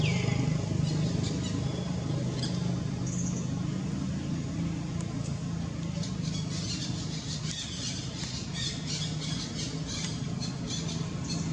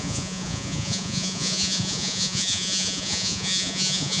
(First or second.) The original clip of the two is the first